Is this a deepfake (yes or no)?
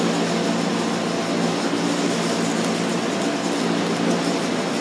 no